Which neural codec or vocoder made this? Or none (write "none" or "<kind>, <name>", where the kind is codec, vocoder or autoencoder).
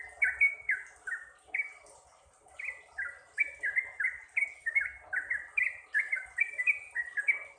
none